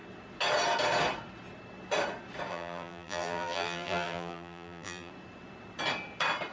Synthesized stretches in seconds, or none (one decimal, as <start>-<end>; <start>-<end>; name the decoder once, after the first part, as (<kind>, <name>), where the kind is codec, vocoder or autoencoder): 2.5-5.1 (vocoder, BigVGAN v2)